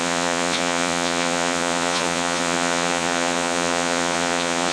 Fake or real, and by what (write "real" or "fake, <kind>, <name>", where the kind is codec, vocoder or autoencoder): fake, vocoder, Vocos